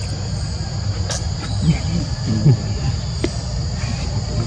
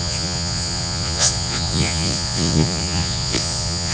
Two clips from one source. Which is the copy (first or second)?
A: second